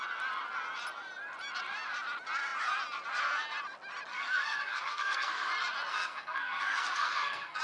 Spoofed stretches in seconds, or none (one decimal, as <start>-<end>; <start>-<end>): 4.1-5.5; 5.9-7.6